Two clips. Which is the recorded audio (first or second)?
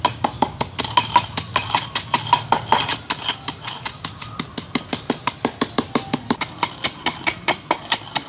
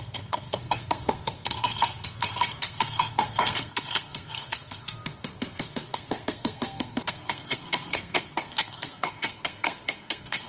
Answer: first